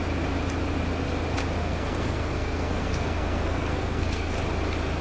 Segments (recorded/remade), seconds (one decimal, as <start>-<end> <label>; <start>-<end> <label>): 0.0-1.6 recorded; 1.6-4.4 remade; 4.4-5.0 recorded